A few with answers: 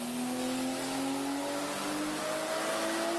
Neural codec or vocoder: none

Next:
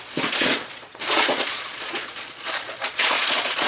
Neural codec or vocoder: vocoder, Vocos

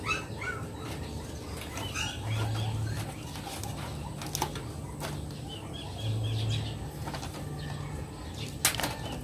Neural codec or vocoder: none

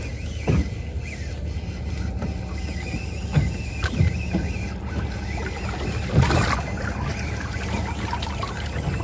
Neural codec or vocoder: none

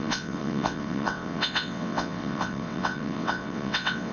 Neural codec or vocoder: vocoder, WaveNeXt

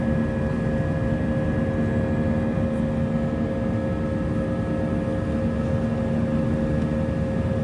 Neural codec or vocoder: none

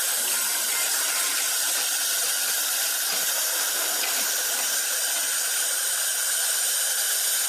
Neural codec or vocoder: vocoder, BigVGAN v2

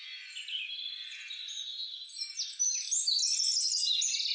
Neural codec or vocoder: none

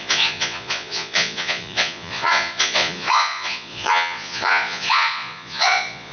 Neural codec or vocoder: vocoder, Vocos